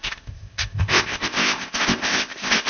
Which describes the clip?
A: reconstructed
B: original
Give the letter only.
A